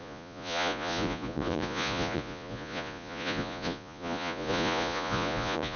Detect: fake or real fake